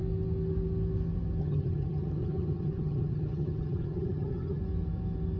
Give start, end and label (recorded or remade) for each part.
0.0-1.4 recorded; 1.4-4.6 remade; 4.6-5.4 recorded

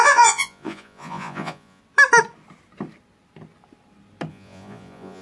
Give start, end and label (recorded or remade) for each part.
0.0-1.8 remade; 1.8-4.3 recorded; 4.3-5.2 remade

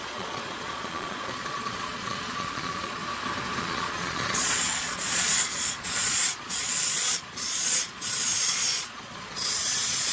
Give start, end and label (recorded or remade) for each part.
0.0-3.0 remade; 3.0-3.6 recorded; 3.6-10.1 remade